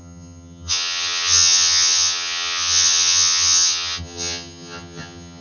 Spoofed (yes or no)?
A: yes